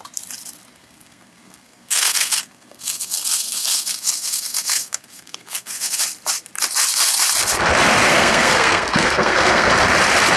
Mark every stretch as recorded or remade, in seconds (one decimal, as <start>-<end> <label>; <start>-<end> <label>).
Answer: 0.0-0.8 recorded; 0.8-6.0 remade; 6.0-8.1 recorded; 8.1-9.7 remade; 9.7-10.4 recorded